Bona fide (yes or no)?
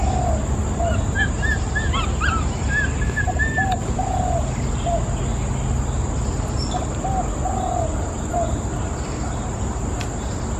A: yes